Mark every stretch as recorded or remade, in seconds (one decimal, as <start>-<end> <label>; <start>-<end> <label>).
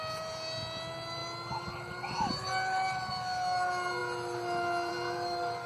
0.0-5.7 recorded